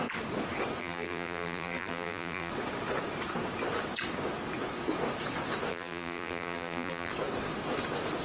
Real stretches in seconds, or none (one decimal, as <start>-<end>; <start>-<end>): 0.0-0.8; 2.5-5.7; 7.1-8.2